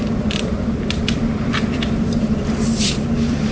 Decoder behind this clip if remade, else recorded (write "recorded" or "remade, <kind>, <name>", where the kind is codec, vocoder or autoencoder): remade, vocoder, BigVGAN v2